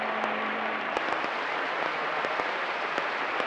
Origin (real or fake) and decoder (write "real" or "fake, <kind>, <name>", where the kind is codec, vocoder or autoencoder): real